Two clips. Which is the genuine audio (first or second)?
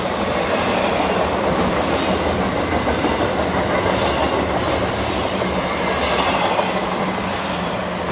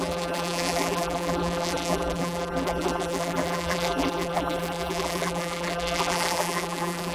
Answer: first